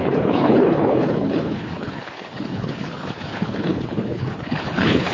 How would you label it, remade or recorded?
remade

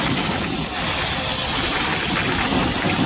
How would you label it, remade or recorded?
recorded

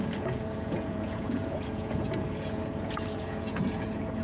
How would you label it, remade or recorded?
remade